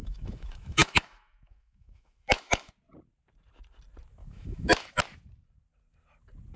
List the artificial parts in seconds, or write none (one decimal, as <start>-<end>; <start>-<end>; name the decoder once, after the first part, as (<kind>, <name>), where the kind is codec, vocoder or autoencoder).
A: 0.0-2.7 (autoencoder, DAC-VAE); 4.2-5.0